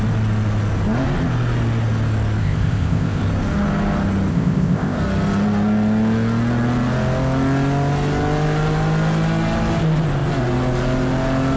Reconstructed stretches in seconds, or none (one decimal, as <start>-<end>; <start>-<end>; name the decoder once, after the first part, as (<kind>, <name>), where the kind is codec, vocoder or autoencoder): 2.4-3.2 (codec, ZipCodec); 4.3-5.0